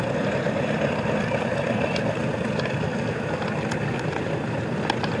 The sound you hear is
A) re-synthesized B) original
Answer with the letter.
B